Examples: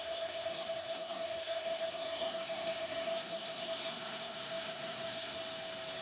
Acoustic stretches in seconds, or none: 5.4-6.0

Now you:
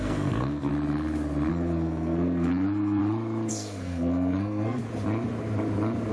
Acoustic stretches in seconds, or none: 0.7-1.5; 3.0-3.5; 4.8-6.1

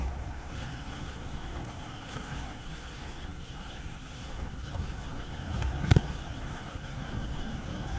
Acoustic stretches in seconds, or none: none

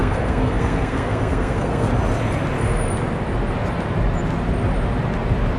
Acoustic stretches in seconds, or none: 1.9-5.6

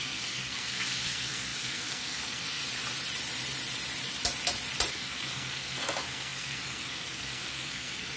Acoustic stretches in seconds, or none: 2.6-4.9